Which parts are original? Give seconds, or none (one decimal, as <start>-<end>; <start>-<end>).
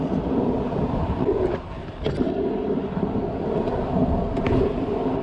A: 0.0-5.2